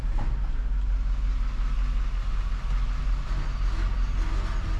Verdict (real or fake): real